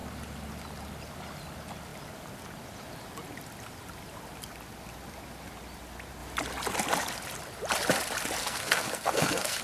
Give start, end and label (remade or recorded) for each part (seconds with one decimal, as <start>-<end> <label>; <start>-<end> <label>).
0.0-8.4 recorded; 8.4-9.6 remade